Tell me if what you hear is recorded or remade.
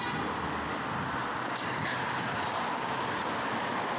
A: recorded